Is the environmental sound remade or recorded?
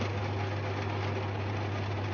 recorded